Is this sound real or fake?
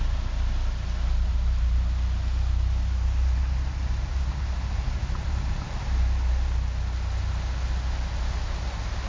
real